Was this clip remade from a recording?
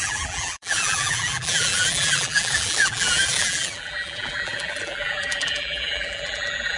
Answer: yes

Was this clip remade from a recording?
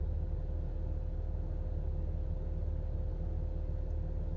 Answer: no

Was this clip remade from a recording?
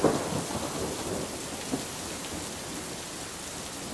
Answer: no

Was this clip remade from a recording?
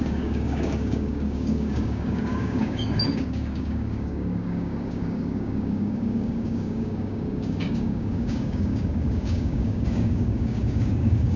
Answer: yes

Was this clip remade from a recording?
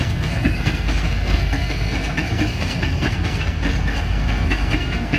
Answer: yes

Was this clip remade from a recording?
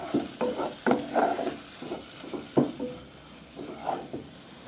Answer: no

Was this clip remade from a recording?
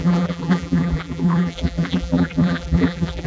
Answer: yes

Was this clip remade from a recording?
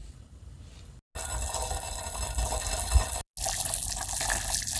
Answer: no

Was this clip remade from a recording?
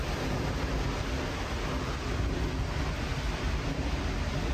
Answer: no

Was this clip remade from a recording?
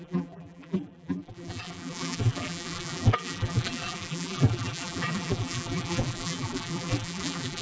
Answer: yes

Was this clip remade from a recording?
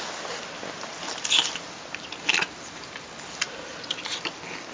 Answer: no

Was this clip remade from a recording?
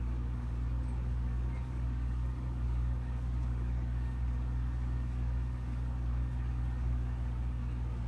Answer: yes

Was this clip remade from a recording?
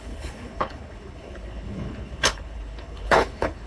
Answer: yes